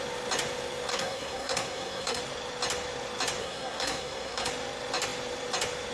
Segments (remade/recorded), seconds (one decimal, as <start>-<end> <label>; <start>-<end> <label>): 0.0-0.9 recorded; 0.9-2.2 remade; 2.2-3.4 recorded; 3.4-4.5 remade; 4.5-5.9 recorded